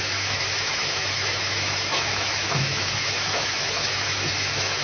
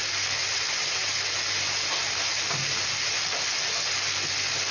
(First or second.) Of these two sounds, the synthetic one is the first